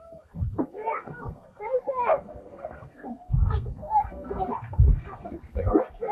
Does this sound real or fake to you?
fake